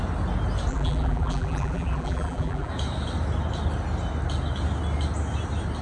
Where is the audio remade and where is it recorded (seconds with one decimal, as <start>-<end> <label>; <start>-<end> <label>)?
0.0-0.7 recorded; 0.7-2.7 remade; 2.7-5.8 recorded